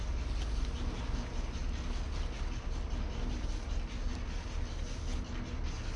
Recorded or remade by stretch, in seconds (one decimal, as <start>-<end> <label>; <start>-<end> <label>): 0.0-6.0 recorded